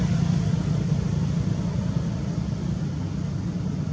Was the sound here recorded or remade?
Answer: recorded